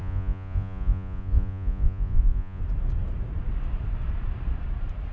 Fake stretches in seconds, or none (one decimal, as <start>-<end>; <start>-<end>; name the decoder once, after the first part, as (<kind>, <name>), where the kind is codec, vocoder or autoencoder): 0.0-2.6 (vocoder, Vocos)